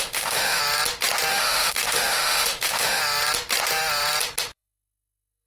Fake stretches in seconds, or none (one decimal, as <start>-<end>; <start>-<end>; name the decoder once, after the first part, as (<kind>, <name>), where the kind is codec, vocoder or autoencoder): 0.0-0.6 (autoencoder, DAC-VAE); 1.3-3.0; 4.5-5.5